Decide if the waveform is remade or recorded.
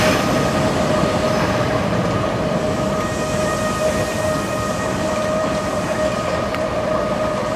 remade